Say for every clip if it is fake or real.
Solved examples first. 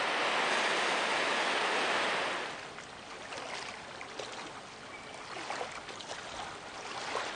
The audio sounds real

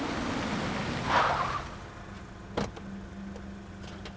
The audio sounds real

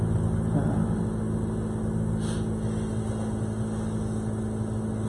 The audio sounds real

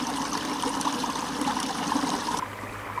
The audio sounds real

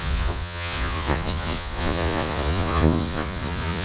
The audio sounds fake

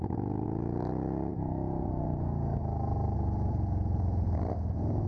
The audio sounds real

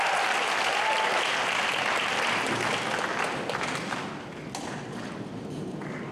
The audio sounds real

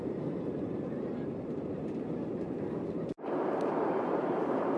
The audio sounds fake